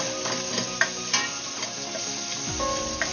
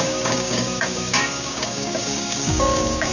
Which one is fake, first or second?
second